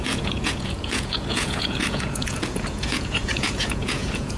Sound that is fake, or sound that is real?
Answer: fake